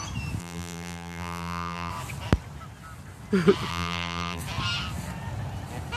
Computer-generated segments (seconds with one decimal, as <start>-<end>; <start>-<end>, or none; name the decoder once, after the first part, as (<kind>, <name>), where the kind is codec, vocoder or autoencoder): 0.4-1.9 (vocoder, BigVGAN v2); 3.7-4.4